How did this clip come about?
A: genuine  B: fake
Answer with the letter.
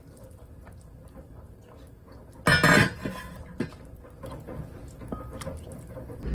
A